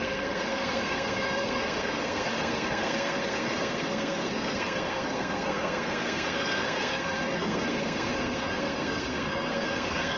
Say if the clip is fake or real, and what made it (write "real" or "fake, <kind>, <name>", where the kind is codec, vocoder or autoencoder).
fake, codec, SNAC